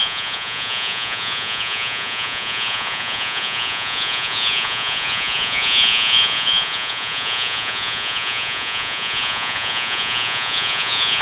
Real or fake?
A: fake